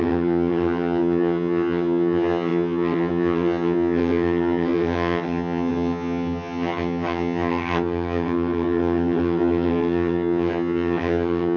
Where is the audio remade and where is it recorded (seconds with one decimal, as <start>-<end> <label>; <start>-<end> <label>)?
0.0-11.6 remade